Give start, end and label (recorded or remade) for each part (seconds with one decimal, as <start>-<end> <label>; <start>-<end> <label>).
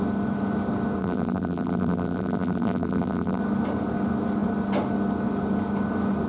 0.0-1.0 recorded; 1.0-3.4 remade; 3.4-6.3 recorded